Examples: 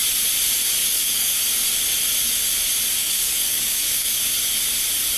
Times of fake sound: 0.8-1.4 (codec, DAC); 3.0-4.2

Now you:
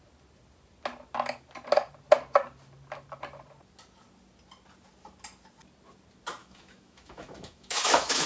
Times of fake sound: 6.4-8.3 (autoencoder, DAC-VAE)

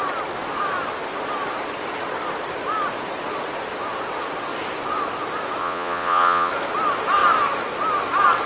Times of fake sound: 5.6-6.5 (vocoder, Vocos)

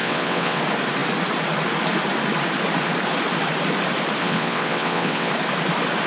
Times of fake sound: 0.0-0.6 (vocoder, WaveNeXt); 4.2-5.3